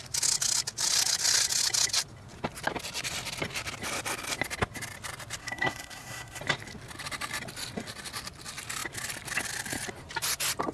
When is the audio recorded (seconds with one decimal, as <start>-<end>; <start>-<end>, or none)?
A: 0.0-5.4; 6.4-10.7